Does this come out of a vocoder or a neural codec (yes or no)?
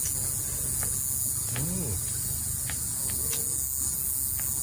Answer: no